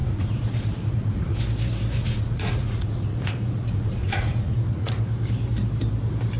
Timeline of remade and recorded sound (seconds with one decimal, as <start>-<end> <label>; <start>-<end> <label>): 0.0-1.4 remade; 1.4-2.0 recorded; 2.0-4.9 remade; 4.9-6.4 recorded